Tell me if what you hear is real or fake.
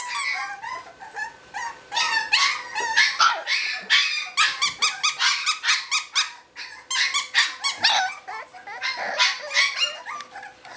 real